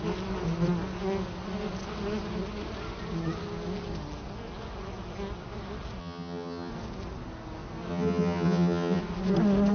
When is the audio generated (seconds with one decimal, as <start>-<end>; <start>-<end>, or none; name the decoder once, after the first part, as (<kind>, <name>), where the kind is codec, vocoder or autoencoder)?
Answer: 6.0-6.7 (vocoder, HiFi-GAN); 7.9-9.0